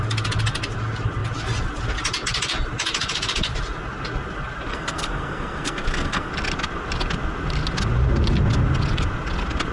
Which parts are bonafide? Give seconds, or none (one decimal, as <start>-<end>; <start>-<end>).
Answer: 0.0-4.7; 6.3-9.7